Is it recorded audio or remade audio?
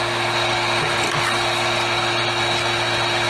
recorded